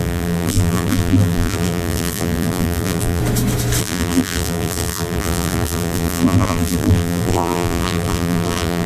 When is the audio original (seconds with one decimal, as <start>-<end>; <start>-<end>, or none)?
3.2-3.8